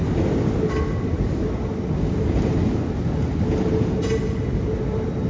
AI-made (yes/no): no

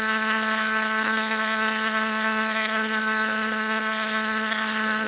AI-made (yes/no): yes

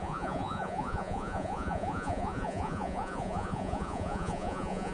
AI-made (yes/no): yes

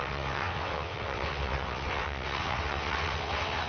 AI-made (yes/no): yes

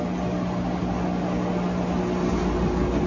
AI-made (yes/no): no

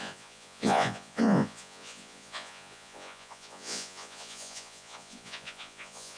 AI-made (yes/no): yes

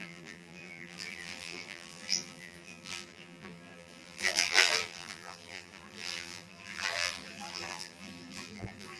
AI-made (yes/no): yes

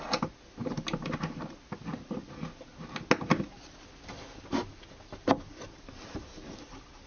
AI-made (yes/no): no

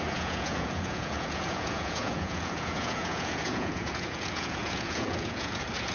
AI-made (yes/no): yes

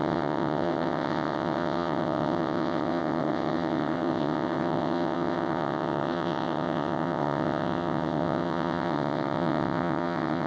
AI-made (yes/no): yes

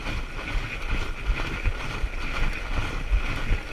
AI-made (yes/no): no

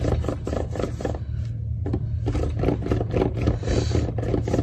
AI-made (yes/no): no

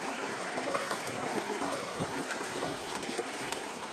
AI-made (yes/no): yes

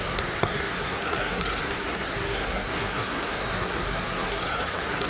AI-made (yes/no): yes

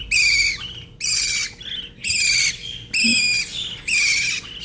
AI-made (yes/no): no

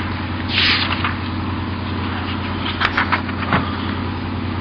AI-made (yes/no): no